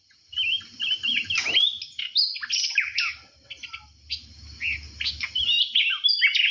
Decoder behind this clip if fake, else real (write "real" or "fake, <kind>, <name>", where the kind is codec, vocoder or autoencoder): real